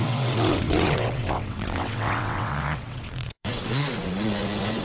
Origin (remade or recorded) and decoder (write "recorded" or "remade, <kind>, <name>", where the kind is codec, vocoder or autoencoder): remade, vocoder, WaveNeXt